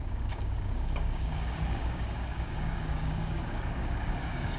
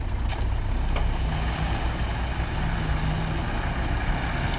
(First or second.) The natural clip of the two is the second